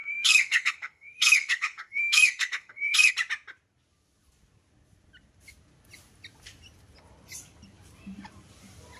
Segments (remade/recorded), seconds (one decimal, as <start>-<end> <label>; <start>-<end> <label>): 0.0-3.1 remade; 3.1-9.0 recorded